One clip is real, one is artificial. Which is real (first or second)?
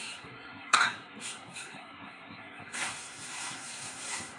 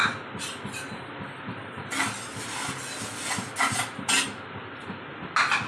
second